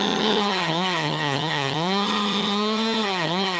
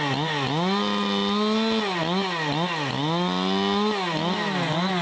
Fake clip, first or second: first